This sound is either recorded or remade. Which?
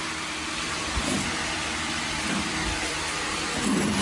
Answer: remade